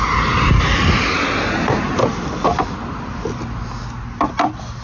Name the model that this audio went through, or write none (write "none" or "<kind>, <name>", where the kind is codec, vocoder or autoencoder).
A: none